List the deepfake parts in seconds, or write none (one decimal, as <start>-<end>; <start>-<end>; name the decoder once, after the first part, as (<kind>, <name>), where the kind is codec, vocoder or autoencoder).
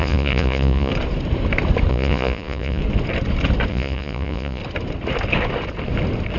0.0-0.9 (vocoder, Vocos); 1.9-2.8; 3.7-4.6